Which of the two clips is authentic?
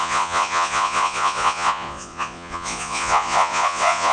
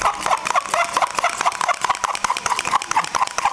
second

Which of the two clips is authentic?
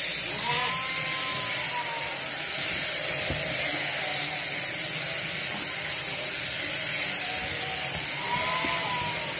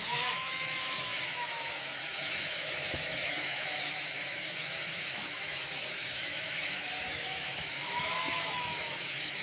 first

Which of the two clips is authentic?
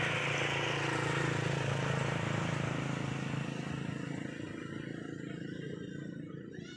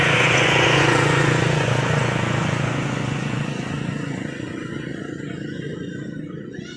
first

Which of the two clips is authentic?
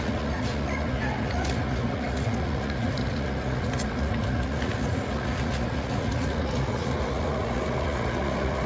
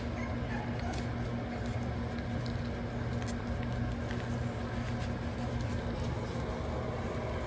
second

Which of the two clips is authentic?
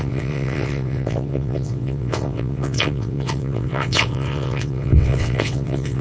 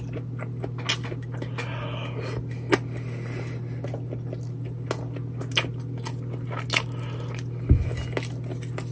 second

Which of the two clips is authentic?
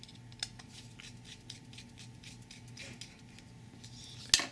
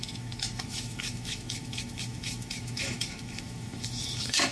first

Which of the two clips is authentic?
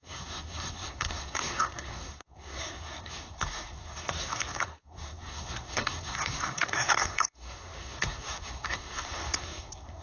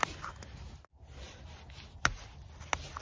second